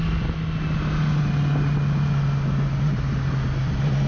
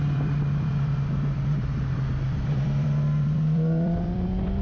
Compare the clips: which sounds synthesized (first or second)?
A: second